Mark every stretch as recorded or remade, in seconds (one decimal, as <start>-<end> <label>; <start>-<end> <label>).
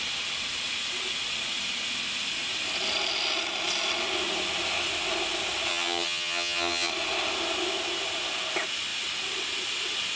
0.0-5.7 recorded; 5.7-6.9 remade; 6.9-10.2 recorded